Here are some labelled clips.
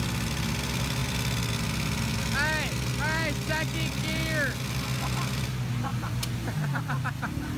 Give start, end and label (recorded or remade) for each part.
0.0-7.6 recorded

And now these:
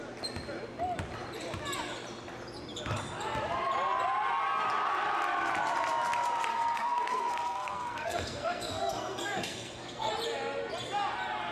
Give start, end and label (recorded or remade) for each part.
0.0-6.5 recorded; 6.5-10.1 remade; 10.1-11.5 recorded

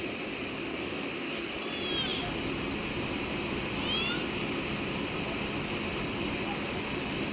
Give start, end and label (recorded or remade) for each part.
0.0-0.7 recorded; 0.7-1.5 remade; 1.5-7.3 recorded

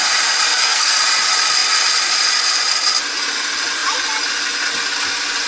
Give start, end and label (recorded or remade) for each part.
0.0-0.5 recorded; 0.5-1.0 remade; 1.0-5.5 recorded

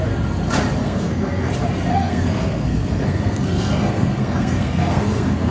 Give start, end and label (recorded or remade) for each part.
0.0-0.8 recorded; 0.8-1.5 remade; 1.5-1.9 recorded; 1.9-5.5 remade

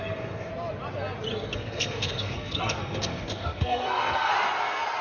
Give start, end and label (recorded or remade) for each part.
0.0-0.5 remade; 0.5-1.3 recorded; 1.3-4.3 remade; 4.3-5.0 recorded

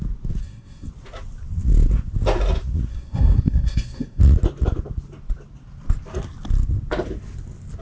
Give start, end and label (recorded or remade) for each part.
0.0-0.4 recorded; 0.4-0.9 remade; 0.9-2.9 recorded; 2.9-4.2 remade; 4.2-7.8 recorded

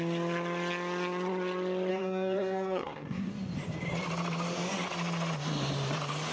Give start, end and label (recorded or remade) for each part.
0.0-1.9 recorded; 1.9-3.3 remade; 3.3-6.3 recorded